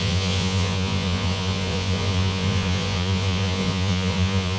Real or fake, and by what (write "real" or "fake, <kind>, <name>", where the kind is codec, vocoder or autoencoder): fake, vocoder, Vocos